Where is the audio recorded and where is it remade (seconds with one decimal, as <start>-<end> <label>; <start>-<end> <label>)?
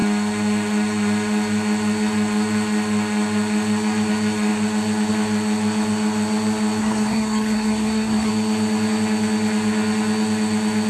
0.0-6.8 recorded; 6.8-8.3 remade; 8.3-10.9 recorded